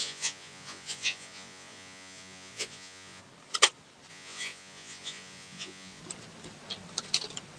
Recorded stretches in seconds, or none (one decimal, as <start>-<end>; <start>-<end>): 3.2-4.1; 6.0-7.6